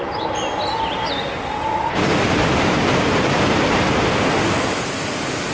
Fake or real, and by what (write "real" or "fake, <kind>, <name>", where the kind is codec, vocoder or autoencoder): real